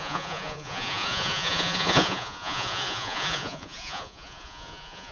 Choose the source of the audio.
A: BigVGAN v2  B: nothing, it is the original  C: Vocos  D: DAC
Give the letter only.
C